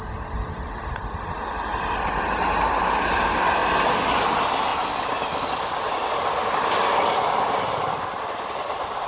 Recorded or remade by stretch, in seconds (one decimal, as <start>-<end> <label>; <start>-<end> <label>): 0.0-9.1 recorded